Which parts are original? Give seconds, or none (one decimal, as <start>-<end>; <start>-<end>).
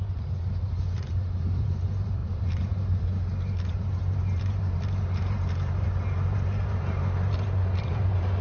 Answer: none